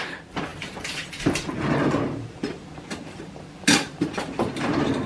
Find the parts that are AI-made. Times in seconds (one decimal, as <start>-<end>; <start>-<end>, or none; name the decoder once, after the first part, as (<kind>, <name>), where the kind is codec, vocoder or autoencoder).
0.0-2.4 (vocoder, BigVGAN v2); 3.2-5.1